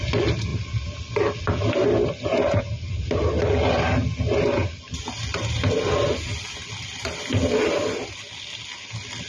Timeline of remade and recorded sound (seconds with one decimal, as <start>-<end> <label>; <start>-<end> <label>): 0.0-9.3 recorded